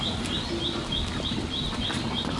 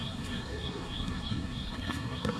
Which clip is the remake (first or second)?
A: second